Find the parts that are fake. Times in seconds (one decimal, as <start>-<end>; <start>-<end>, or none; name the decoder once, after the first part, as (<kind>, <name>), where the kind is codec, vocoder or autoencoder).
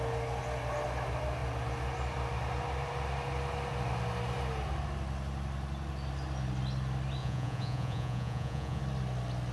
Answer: 7.2-8.8 (vocoder, Vocos)